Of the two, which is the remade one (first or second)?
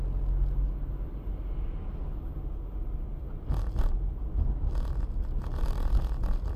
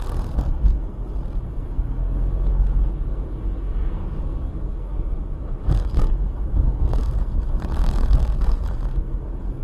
second